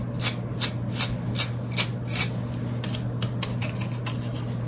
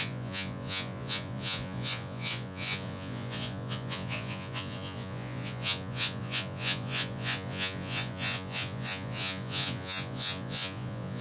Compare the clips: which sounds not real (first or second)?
second